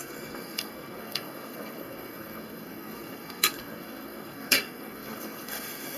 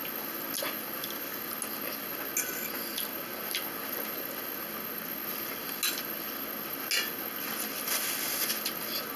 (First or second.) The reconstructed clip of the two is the first